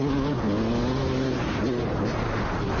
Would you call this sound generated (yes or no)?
no